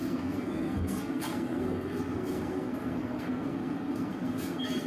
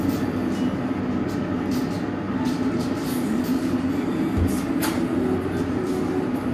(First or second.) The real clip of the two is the second